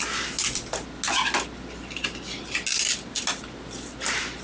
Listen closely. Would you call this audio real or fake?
real